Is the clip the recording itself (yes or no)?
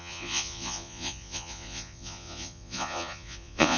no